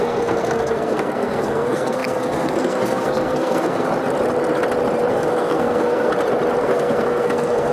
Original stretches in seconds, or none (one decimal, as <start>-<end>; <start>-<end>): 3.9-5.1; 6.1-6.6